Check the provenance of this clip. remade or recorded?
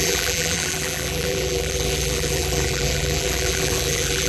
remade